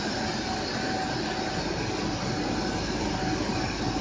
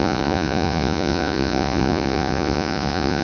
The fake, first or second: second